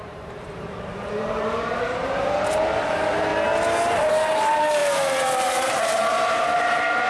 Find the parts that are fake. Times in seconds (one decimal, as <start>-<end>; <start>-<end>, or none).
0.0-3.3; 4.1-7.1